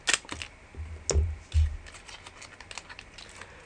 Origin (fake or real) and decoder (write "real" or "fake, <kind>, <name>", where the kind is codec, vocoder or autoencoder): real